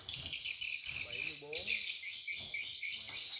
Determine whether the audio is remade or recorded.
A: recorded